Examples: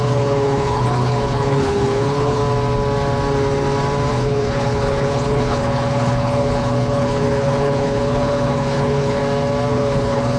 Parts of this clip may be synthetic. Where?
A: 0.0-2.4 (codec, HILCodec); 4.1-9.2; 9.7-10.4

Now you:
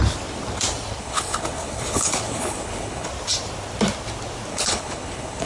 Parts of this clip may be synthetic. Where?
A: 1.0-3.1 (codec, HILCodec); 4.5-5.5

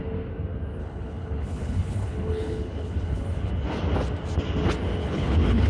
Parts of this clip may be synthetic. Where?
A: 0.8-3.5 (codec, HILCodec); 5.0-5.7

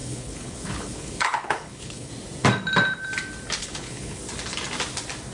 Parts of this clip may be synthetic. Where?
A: 0.0-2.1 (codec, HILCodec); 3.6-4.2

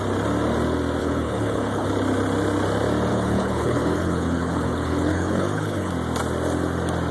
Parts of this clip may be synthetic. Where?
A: 1.0-1.9 (codec, HILCodec); 3.1-5.9

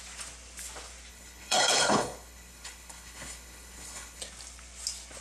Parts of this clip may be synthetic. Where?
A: 1.1-4.2 (codec, HILCodec)

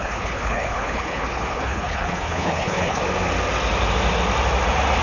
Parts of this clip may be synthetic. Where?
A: 0.0-3.0 (codec, HILCodec)

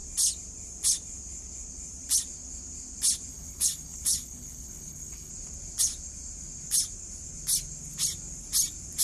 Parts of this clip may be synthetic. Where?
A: 3.3-5.3 (codec, HILCodec)